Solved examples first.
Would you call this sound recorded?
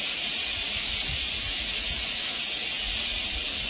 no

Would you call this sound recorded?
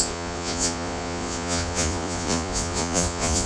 no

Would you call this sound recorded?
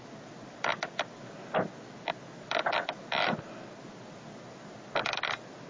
yes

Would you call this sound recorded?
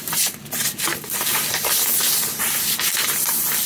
no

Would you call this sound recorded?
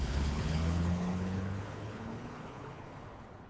no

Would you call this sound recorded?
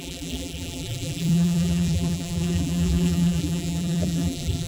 no